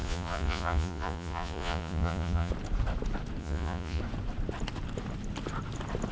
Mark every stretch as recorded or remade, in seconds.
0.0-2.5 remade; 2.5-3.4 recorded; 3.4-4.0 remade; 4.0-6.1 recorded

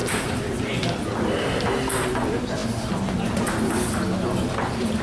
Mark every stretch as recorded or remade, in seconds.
0.0-0.7 remade; 0.7-5.0 recorded